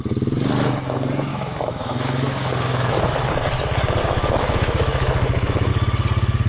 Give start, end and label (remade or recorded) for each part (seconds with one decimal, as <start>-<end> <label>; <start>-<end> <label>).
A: 0.0-1.3 recorded; 1.3-3.1 remade; 3.1-4.0 recorded; 4.0-5.7 remade; 5.7-6.5 recorded